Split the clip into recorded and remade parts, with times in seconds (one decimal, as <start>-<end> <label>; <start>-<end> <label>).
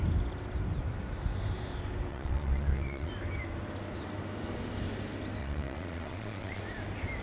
0.0-2.1 recorded; 2.1-3.1 remade; 3.1-5.4 recorded; 5.4-6.6 remade; 6.6-7.2 recorded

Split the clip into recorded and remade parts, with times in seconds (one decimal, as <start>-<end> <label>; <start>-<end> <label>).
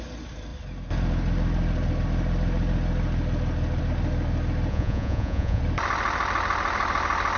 0.0-4.7 recorded; 4.7-5.6 remade; 5.6-7.4 recorded